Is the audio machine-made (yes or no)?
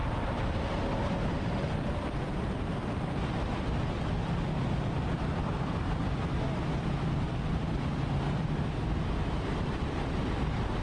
yes